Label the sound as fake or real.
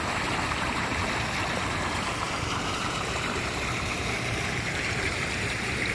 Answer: fake